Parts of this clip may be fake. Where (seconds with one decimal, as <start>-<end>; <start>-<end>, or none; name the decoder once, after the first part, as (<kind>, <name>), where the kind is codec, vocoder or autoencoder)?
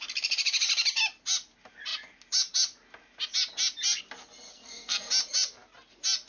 4.5-5.1 (codec, SNAC)